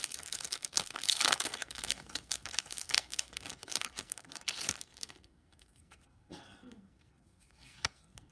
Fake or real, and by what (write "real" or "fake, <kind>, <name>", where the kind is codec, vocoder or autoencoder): fake, codec, SNAC